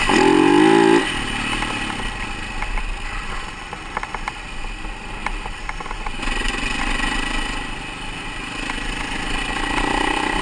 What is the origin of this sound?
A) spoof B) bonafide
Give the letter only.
B